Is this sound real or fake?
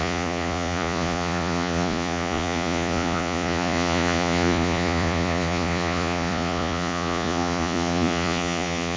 fake